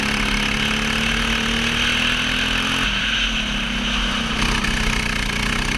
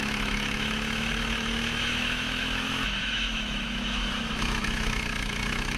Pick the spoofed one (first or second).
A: second